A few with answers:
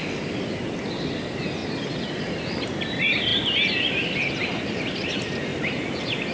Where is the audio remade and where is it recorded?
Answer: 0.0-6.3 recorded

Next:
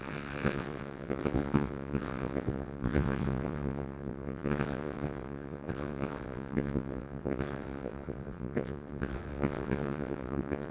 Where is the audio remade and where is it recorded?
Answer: 0.0-10.7 remade

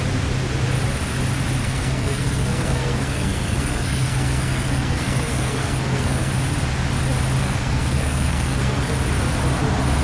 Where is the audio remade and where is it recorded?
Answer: 0.0-1.6 recorded; 1.6-6.3 remade; 6.3-7.4 recorded; 7.4-8.9 remade; 8.9-10.0 recorded

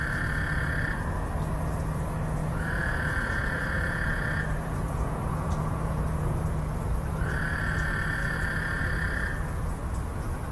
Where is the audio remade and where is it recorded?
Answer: 0.0-2.4 recorded; 2.4-7.4 remade; 7.4-8.2 recorded; 8.2-8.8 remade; 8.8-10.5 recorded